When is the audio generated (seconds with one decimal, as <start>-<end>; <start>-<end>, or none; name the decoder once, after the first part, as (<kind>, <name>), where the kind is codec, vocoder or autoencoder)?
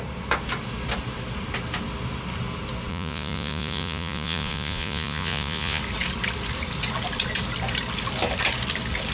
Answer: 2.9-5.8 (vocoder, Vocos)